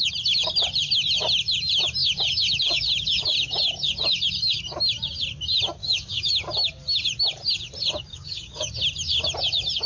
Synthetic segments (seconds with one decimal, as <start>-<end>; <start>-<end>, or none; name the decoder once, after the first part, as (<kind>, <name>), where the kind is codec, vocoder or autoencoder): 5.8-6.3 (codec, DAC); 8.1-8.7